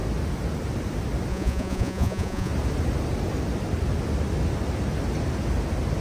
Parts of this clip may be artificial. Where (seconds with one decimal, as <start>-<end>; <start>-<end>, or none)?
1.3-2.5